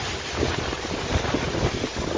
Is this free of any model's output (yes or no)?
yes